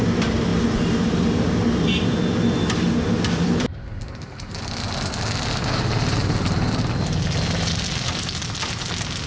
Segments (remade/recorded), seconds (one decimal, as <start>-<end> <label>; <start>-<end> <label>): 0.0-9.3 recorded

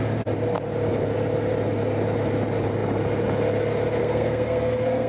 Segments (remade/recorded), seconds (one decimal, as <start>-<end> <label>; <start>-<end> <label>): 0.0-4.0 recorded; 4.0-5.1 remade

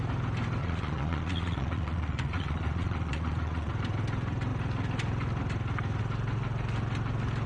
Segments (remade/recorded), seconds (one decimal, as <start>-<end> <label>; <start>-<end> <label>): 0.0-0.6 recorded; 0.6-3.7 remade; 3.7-7.5 recorded